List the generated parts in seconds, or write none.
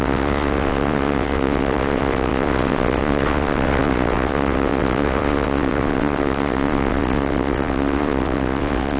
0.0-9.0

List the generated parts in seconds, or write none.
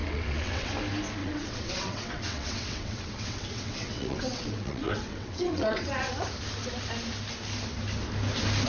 0.0-0.7; 1.2-6.1